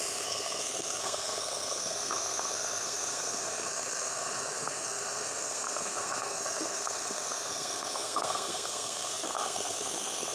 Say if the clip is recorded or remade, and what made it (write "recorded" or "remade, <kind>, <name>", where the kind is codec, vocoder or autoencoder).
remade, codec, SNAC